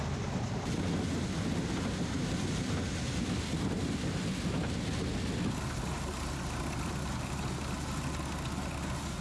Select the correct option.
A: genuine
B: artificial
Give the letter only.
A